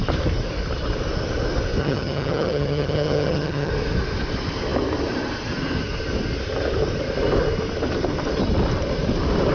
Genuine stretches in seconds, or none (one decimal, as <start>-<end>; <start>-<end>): 0.0-1.8; 3.7-9.5